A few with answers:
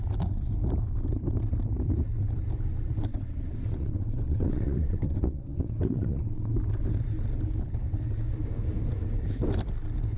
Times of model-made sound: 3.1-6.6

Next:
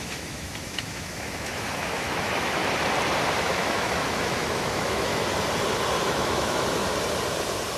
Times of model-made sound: 0.0-2.6; 3.4-5.1; 6.0-6.8

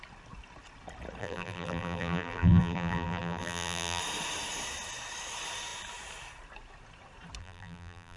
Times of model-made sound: 1.2-4.0; 7.4-8.2

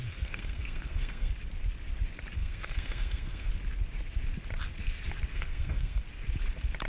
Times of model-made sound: 0.0-1.3; 2.4-3.5; 5.3-6.0

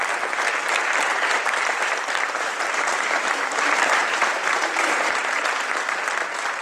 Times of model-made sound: 1.1-3.5; 4.0-5.7

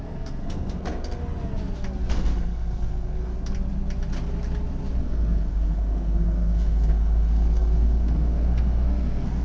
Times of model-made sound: 0.0-1.2; 2.1-3.3; 5.0-9.4

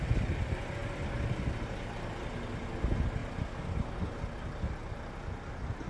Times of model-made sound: none

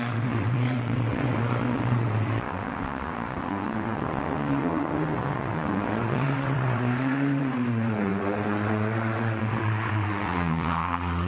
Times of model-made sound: 0.0-11.3